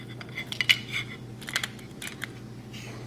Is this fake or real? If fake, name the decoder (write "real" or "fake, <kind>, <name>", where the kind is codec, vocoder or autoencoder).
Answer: real